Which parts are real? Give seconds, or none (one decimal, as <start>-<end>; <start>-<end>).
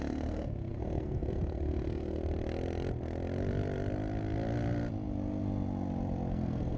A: 2.2-6.3